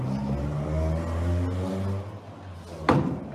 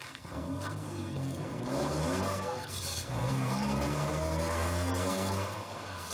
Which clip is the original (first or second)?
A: first